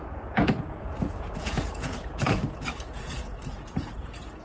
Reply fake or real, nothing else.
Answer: fake